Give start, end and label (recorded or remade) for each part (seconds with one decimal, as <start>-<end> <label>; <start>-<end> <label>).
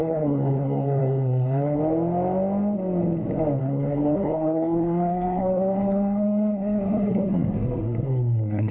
0.0-1.8 remade; 1.8-3.6 recorded; 3.6-8.7 remade